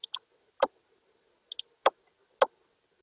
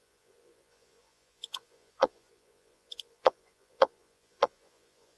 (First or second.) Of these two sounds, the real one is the first